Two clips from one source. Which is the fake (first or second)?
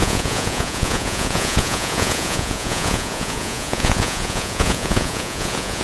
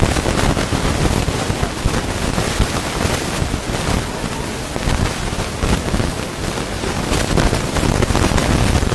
first